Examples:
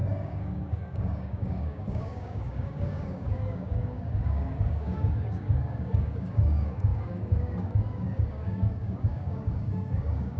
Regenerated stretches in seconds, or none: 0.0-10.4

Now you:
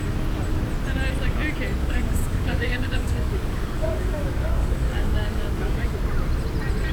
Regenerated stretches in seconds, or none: 1.8-5.9

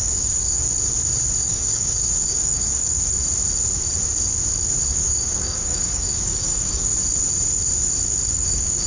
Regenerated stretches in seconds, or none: 0.0-0.6; 1.4-3.2; 4.9-6.9; 8.3-8.9